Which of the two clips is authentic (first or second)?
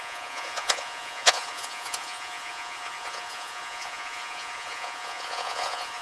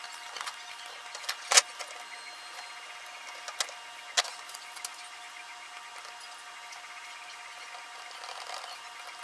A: second